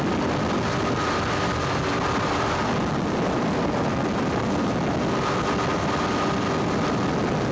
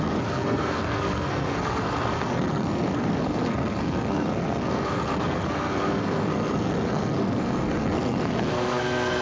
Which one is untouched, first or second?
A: first